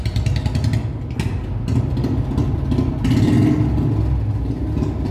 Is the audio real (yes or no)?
yes